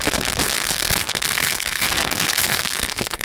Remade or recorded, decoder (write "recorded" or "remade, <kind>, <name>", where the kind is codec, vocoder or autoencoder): remade, codec, SNAC